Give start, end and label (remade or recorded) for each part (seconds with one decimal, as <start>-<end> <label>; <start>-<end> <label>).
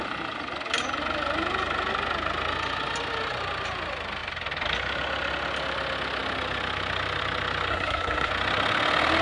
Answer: 0.0-7.7 recorded; 7.7-8.3 remade; 8.3-9.2 recorded